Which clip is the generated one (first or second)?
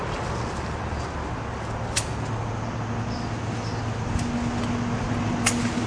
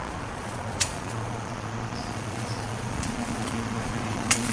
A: second